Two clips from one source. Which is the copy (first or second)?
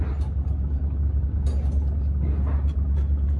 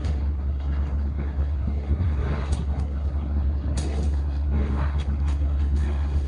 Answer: second